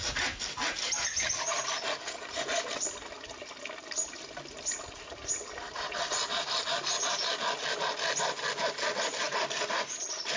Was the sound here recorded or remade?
recorded